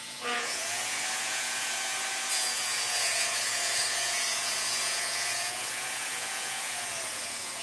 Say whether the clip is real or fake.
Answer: fake